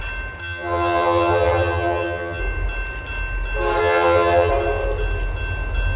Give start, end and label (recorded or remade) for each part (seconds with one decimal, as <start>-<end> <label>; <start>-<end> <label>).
0.0-0.4 recorded; 0.4-2.4 remade; 2.4-3.8 recorded; 3.8-4.5 remade; 4.5-6.0 recorded